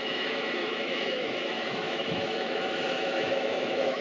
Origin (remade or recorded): remade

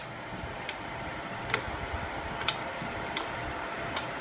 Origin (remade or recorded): remade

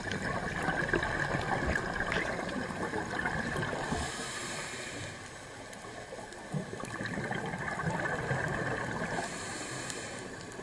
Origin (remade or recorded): recorded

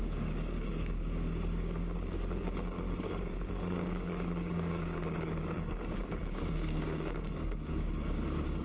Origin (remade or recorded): remade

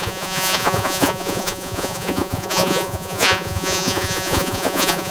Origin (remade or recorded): remade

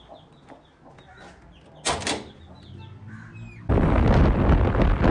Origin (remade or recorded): recorded